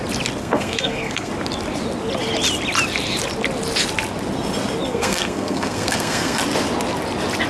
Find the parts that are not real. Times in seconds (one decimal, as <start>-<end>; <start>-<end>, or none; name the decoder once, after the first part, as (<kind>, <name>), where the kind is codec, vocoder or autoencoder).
0.4-1.3 (codec, SNAC); 4.9-6.4